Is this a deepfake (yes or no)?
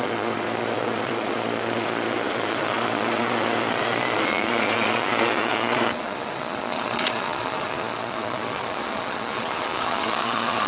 yes